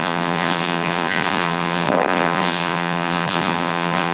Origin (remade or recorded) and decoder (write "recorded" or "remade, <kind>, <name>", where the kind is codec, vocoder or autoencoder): remade, vocoder, BigVGAN v2